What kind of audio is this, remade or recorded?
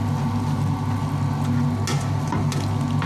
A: recorded